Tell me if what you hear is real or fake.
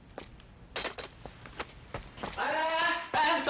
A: real